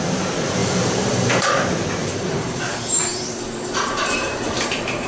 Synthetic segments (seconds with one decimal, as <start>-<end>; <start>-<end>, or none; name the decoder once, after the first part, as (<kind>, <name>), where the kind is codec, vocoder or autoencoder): 0.6-1.5 (vocoder, BigVGAN v2); 2.0-5.1